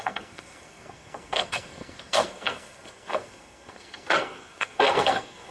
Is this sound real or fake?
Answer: fake